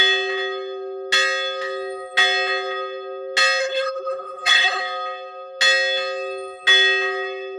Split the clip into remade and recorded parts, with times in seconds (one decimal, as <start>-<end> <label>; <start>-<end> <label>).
0.0-3.6 recorded; 3.6-4.8 remade; 4.8-7.6 recorded